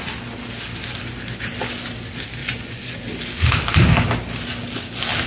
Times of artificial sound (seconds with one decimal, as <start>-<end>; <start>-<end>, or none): 2.4-3.0